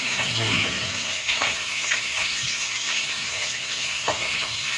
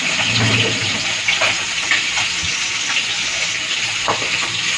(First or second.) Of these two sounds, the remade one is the first